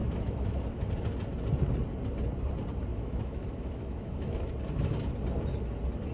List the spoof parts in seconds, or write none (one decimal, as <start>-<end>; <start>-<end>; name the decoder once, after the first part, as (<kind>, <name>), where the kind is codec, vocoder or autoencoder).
0.0-0.9 (autoencoder, DAC-VAE); 2.9-4.5